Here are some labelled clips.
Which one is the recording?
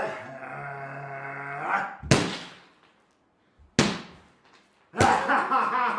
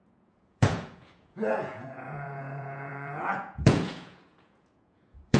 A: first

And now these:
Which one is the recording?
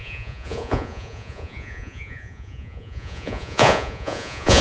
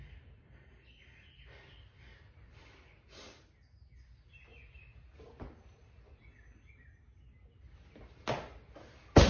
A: second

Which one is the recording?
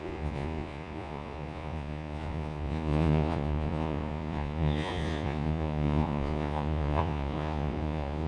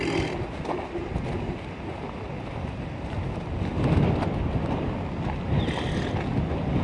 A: second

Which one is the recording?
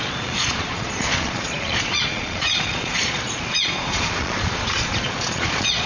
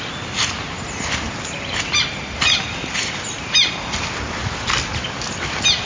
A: second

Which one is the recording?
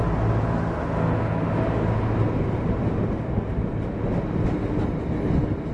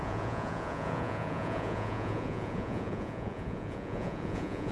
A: first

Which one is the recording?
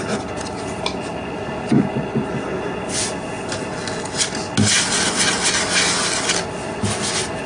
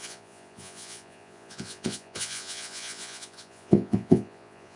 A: first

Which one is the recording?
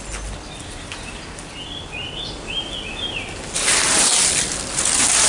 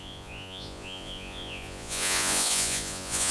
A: first